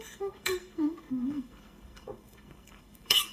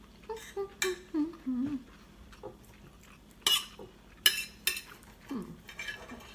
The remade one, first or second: first